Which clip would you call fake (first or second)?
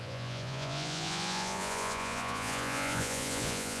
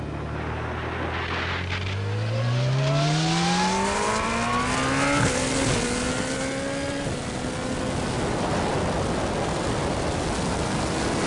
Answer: first